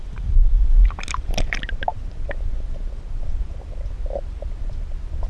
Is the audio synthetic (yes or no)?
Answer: no